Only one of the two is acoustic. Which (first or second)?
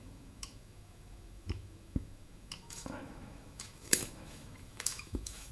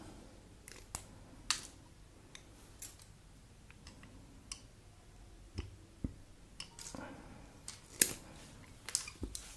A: second